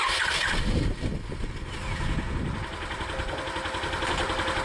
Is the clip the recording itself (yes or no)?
yes